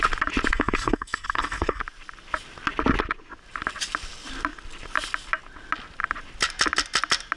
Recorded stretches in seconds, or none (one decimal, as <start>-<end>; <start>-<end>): 0.0-0.5; 1.8-7.4